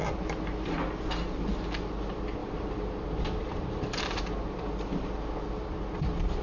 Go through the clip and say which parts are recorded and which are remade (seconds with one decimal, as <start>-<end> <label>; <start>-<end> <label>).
0.0-2.4 recorded; 2.4-4.2 remade; 4.2-6.4 recorded